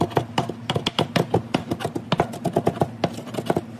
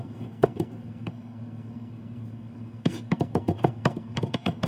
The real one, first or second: first